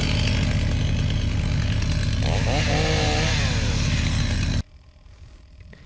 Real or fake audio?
real